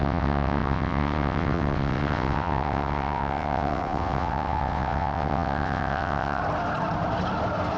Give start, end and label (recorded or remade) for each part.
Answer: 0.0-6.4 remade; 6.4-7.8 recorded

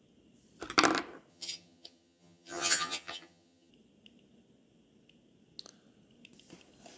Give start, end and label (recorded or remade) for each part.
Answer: 0.0-1.3 recorded; 1.3-3.7 remade; 3.7-7.0 recorded

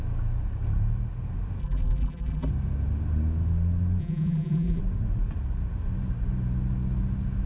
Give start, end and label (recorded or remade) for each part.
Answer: 0.0-1.6 recorded; 1.6-2.5 remade; 2.5-4.0 recorded; 4.0-4.8 remade; 4.8-7.5 recorded

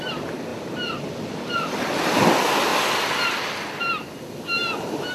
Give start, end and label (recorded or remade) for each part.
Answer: 0.0-5.1 recorded

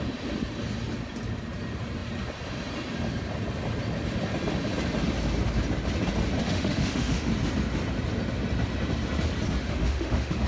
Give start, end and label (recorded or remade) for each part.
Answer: 0.0-6.4 recorded; 6.4-7.3 remade; 7.3-9.6 recorded; 9.6-10.5 remade